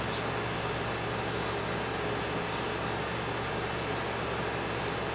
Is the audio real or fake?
real